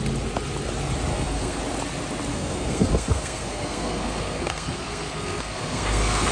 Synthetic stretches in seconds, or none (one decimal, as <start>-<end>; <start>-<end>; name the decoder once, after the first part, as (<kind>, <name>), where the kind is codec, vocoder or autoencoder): 1.1-1.6 (codec, SNAC); 2.3-6.3